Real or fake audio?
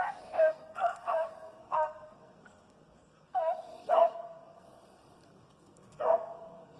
fake